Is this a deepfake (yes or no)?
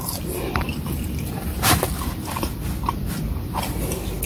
yes